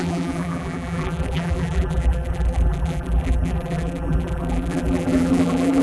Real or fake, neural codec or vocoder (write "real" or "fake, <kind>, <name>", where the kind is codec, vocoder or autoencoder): fake, vocoder, BigVGAN v2